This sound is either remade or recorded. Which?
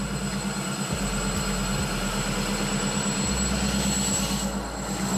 recorded